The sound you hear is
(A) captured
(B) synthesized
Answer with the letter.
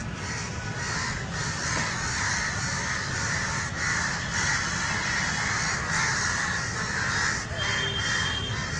A